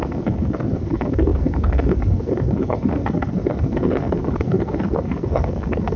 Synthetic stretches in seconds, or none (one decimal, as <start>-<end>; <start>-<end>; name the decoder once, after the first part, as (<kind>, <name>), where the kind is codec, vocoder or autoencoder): 0.0-6.0 (codec, SNAC)